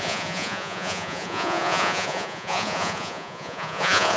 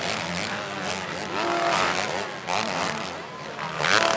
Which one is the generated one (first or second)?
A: first